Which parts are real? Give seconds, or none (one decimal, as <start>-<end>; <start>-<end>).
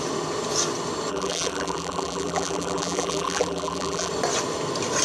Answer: 0.0-1.1; 4.1-5.0